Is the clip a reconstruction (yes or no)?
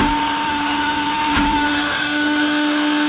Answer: yes